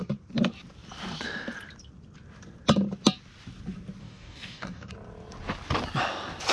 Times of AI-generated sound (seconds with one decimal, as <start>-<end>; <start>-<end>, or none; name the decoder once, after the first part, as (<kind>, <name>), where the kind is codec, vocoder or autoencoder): 4.0-4.9 (codec, DAC)